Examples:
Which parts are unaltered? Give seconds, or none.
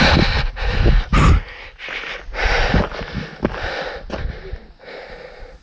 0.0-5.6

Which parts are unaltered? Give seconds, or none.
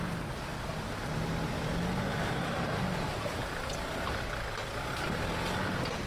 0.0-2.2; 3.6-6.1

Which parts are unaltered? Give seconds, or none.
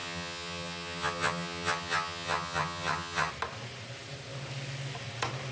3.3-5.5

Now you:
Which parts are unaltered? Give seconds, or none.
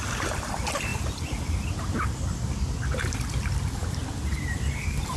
0.0-5.2